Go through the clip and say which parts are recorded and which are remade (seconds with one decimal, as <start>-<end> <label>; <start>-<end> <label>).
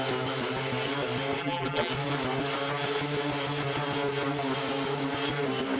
0.0-1.4 recorded; 1.4-1.9 remade; 1.9-5.8 recorded